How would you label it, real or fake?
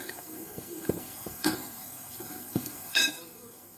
fake